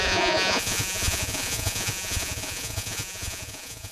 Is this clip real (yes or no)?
no